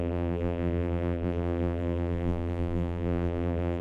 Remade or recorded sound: remade